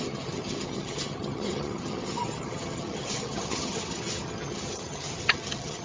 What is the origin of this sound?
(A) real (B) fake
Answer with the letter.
B